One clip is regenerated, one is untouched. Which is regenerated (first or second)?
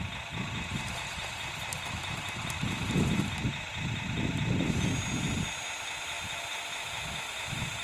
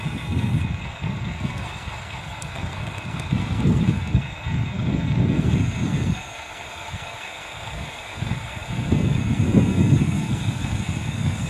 second